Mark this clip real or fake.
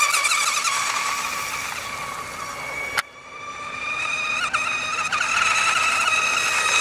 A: real